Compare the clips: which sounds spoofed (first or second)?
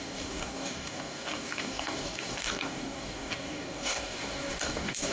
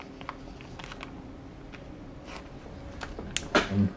first